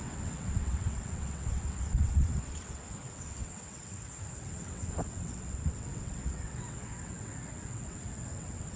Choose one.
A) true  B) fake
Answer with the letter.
B